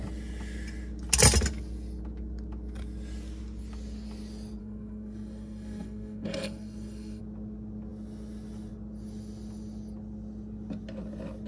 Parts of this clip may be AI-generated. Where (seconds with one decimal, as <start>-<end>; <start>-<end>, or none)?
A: 4.6-7.2